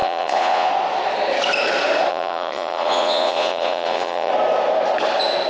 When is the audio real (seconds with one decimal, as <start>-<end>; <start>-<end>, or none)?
0.7-2.1; 4.3-5.5